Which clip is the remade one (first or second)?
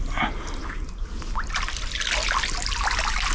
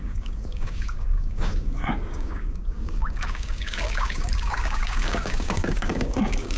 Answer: second